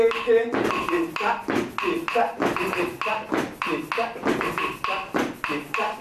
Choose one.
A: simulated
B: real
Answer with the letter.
B